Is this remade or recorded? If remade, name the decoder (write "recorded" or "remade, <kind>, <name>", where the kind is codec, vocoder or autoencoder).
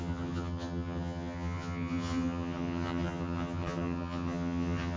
remade, vocoder, HiFi-GAN